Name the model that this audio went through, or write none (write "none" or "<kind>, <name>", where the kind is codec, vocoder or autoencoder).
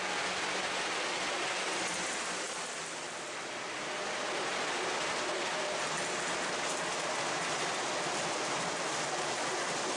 none